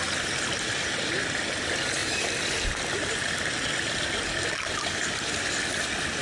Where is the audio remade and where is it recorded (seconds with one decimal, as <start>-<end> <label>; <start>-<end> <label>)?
0.0-6.2 recorded